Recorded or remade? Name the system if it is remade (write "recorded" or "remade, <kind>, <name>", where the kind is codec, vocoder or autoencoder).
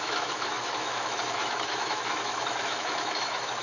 remade, autoencoder, DAC-VAE